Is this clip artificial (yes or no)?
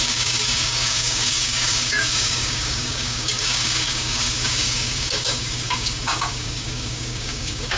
yes